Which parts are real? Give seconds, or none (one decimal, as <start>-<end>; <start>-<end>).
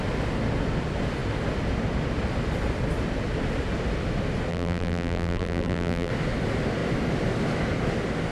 0.0-4.5; 6.1-8.3